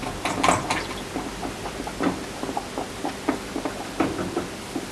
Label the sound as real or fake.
real